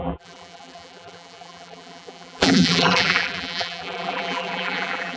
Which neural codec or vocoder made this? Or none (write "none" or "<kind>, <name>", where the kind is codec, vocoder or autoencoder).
vocoder, BigVGAN v2